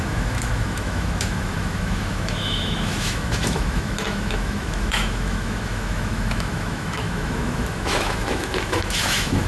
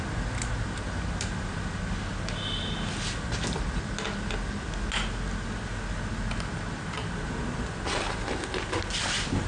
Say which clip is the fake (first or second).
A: first